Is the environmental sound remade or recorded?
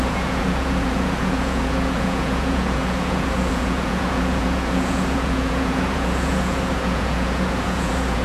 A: remade